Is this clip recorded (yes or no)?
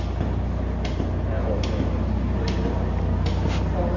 yes